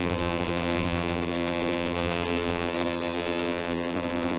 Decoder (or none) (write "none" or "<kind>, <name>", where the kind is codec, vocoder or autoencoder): vocoder, BigVGAN v2